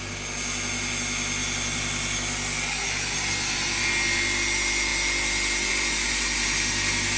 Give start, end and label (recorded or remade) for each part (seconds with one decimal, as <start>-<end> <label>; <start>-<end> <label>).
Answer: 0.0-7.2 recorded